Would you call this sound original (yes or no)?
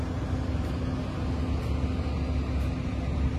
yes